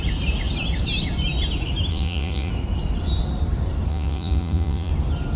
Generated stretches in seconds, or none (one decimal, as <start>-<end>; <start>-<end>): 1.9-2.5; 3.9-4.9